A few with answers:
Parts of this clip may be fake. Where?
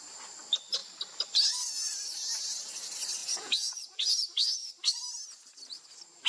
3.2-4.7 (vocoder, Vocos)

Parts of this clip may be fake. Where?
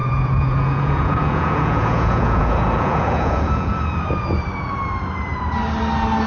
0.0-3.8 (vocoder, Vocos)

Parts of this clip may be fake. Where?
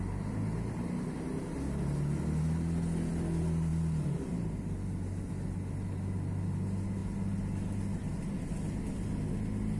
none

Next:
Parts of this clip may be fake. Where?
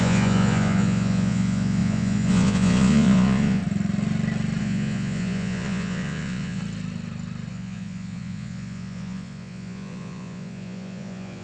0.0-3.6 (vocoder, Vocos); 4.6-6.6; 7.5-11.4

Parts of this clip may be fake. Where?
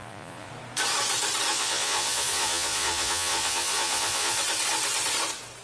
0.0-0.5 (vocoder, Vocos); 1.5-4.4